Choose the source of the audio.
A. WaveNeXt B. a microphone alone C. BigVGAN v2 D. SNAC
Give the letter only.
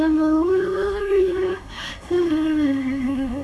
D